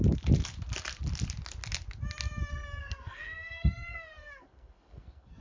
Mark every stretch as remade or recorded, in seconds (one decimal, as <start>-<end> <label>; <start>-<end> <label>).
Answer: 0.0-2.5 recorded; 2.5-5.4 remade